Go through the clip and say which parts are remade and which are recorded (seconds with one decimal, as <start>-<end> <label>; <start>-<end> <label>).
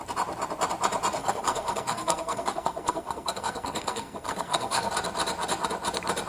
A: 0.0-1.2 recorded; 1.2-4.9 remade; 4.9-6.3 recorded